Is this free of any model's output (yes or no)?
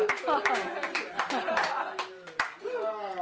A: no